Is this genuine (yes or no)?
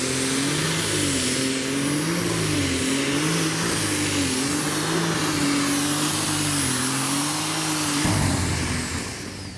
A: yes